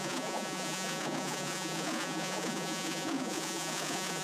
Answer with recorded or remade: remade